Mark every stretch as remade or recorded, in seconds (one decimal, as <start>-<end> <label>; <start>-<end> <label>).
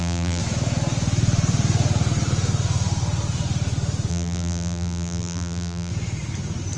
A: 0.0-0.4 remade; 0.4-4.1 recorded; 4.1-5.9 remade; 5.9-6.8 recorded